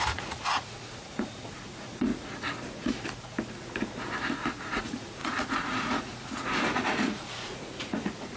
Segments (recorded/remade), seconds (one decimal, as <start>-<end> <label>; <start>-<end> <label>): 0.0-2.1 remade; 2.1-4.6 recorded; 4.6-8.4 remade